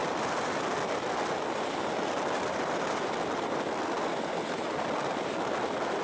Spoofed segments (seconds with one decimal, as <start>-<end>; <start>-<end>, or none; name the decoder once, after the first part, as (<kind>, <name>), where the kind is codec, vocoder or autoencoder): none